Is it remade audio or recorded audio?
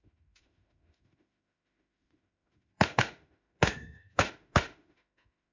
remade